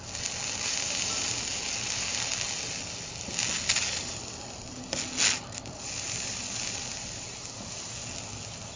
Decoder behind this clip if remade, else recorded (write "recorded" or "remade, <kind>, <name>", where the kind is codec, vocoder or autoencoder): recorded